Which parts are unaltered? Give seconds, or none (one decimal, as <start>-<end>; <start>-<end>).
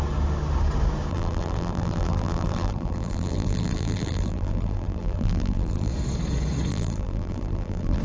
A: 0.0-1.1; 5.9-6.7